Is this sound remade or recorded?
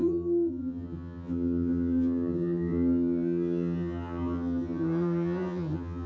remade